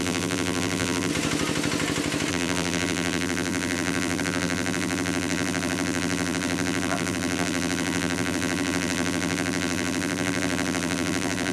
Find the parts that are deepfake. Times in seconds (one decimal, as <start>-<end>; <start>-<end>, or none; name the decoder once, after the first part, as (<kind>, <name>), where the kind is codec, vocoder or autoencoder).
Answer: 0.0-1.1 (vocoder, BigVGAN v2); 2.3-11.5